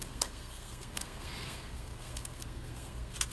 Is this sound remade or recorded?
remade